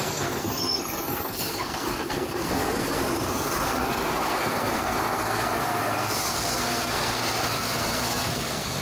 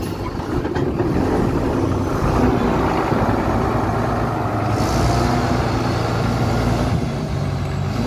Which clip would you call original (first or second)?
second